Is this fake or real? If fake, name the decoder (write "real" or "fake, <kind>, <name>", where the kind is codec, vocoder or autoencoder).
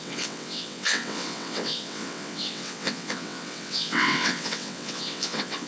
fake, vocoder, WaveNeXt